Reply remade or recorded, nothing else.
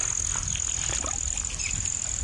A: recorded